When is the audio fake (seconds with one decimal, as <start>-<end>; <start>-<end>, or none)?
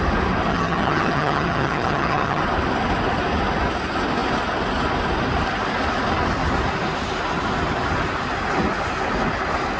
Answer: 0.5-2.4